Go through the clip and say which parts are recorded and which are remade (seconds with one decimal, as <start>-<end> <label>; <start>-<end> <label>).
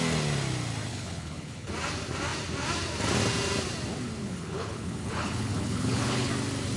0.0-0.9 recorded; 0.9-1.7 remade; 1.7-4.2 recorded; 4.2-6.3 remade; 6.3-6.8 recorded